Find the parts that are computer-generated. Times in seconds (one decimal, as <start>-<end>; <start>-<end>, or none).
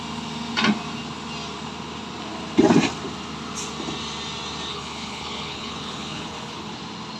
4.7-6.7